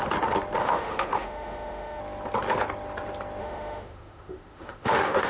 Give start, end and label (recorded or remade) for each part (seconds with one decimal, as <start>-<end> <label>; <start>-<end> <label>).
0.0-0.6 recorded; 0.6-2.0 remade; 2.0-3.4 recorded; 3.4-5.3 remade